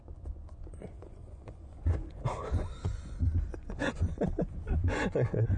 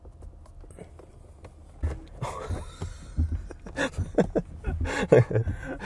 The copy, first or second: first